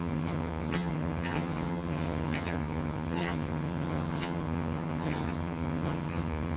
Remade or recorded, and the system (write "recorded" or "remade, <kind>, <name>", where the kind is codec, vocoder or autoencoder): remade, vocoder, HiFi-GAN